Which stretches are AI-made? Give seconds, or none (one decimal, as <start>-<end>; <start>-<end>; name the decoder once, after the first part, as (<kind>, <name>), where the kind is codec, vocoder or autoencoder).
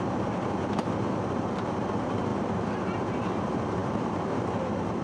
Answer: 0.0-5.0 (vocoder, BigVGAN v2)